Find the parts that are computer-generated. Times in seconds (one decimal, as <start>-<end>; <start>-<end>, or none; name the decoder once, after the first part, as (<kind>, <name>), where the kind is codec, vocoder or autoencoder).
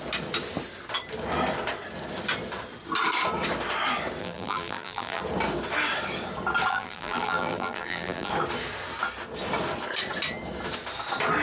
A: 4.2-5.2 (vocoder, BigVGAN v2); 6.7-8.3